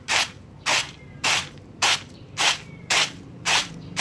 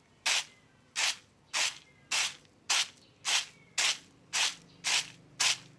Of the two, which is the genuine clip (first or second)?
second